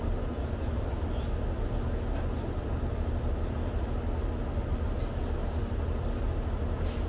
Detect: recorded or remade recorded